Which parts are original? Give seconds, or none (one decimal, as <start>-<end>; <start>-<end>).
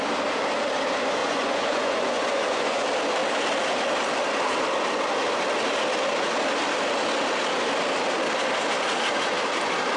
0.0-1.2; 2.8-10.0